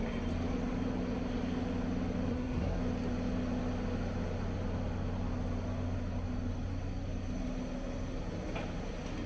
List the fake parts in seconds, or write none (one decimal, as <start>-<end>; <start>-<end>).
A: 2.3-2.8